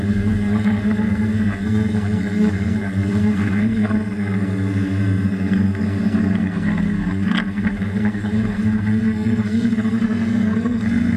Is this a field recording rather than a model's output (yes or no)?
no